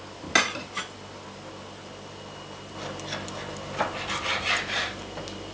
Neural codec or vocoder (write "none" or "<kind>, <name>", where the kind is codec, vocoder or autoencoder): none